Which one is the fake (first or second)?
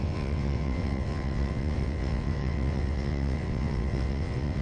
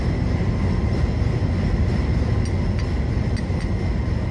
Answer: first